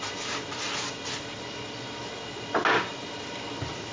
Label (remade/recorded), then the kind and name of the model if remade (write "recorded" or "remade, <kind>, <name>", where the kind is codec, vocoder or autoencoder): recorded